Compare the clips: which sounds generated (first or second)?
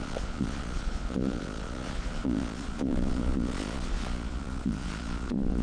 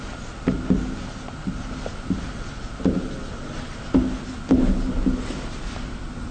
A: first